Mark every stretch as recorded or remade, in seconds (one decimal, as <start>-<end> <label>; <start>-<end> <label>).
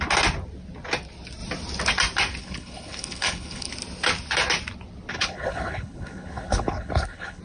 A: 0.0-2.4 recorded; 2.4-3.7 remade; 3.7-5.1 recorded; 5.1-7.4 remade